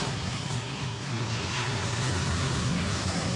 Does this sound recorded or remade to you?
remade